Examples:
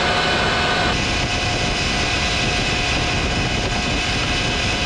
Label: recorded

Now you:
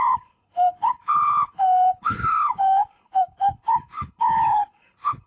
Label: remade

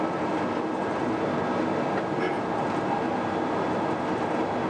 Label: recorded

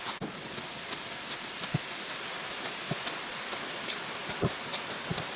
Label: recorded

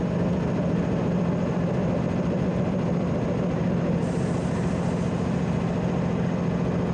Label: recorded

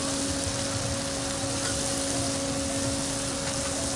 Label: recorded